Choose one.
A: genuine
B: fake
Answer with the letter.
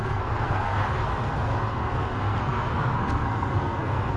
B